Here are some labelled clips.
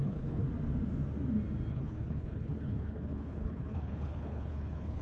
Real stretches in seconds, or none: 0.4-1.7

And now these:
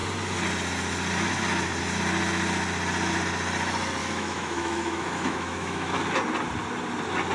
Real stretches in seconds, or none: 0.0-4.0; 6.0-7.3

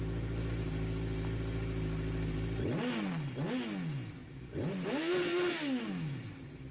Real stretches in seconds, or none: 0.0-6.7

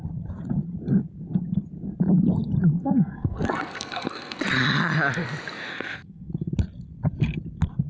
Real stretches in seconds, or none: 0.0-2.8; 4.4-5.7; 6.3-7.9

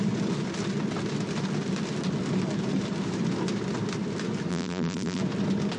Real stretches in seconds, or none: 0.0-4.5; 5.2-5.8

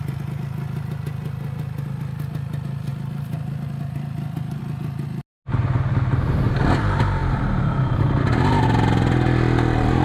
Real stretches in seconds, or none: 0.0-2.9; 4.6-7.2; 8.5-10.0